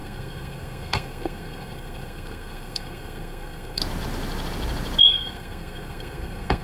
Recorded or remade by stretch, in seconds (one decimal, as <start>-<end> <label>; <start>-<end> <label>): 0.0-3.8 remade; 3.8-5.0 recorded; 5.0-6.6 remade